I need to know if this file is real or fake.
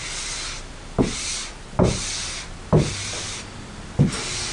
real